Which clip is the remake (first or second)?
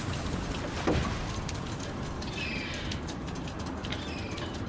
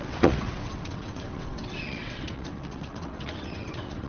second